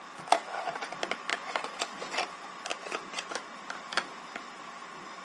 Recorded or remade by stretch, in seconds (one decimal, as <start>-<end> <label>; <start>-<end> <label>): 0.0-1.3 recorded; 1.3-2.2 remade; 2.2-2.7 recorded; 2.7-3.3 remade; 3.3-5.2 recorded